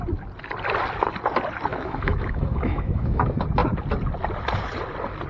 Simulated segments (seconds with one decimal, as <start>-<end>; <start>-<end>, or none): 1.7-3.2